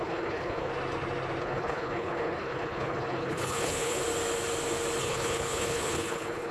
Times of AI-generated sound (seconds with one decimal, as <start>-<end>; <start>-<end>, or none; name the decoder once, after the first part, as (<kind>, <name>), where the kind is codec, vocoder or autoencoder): 0.0-0.7 (codec, HILCodec); 1.4-4.0; 5.0-6.5